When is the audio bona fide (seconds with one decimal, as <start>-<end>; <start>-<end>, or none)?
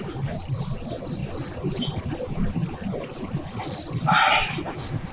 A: 0.0-5.1